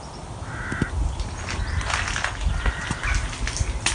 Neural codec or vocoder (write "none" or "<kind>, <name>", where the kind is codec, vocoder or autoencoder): none